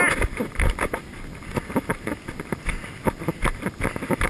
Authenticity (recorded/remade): recorded